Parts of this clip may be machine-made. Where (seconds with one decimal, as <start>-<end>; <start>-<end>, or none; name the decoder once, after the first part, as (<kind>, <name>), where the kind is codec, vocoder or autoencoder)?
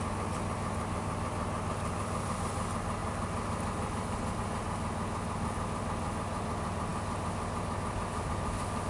none